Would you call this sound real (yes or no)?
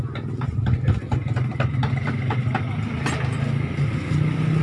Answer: yes